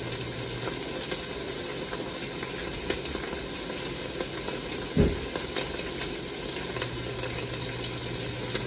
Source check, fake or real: real